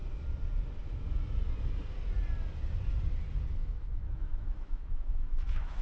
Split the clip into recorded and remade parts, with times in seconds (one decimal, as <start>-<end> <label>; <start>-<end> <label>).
0.0-3.5 recorded; 3.5-5.8 remade